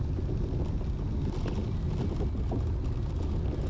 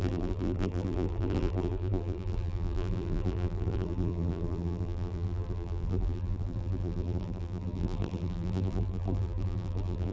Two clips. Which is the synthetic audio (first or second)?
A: second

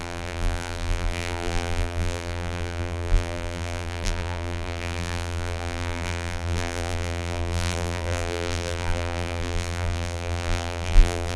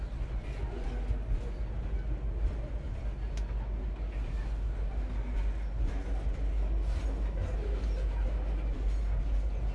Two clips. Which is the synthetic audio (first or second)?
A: first